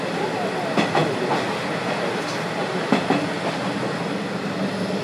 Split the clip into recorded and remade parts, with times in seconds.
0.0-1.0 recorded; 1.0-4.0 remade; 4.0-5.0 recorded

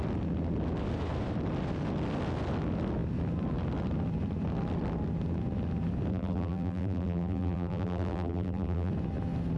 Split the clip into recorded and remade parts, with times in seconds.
0.0-6.1 recorded; 6.1-8.9 remade; 8.9-9.6 recorded

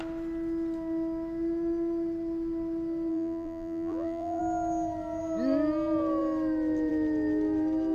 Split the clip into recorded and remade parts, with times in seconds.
0.0-3.1 recorded; 3.1-4.4 remade; 4.4-7.9 recorded